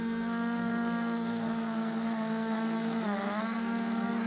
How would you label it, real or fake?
fake